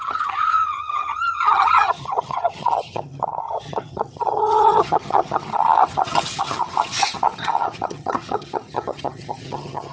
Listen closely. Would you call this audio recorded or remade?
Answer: remade